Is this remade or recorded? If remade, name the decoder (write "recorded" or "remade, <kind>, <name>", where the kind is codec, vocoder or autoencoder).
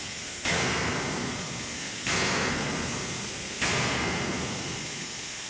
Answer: remade, codec, SNAC